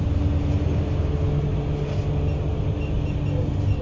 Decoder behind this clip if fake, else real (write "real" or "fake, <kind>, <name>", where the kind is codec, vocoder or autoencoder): real